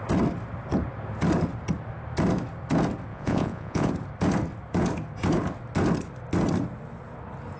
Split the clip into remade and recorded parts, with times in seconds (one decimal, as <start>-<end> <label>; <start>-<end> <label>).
0.0-3.1 recorded; 3.1-3.9 remade; 3.9-7.6 recorded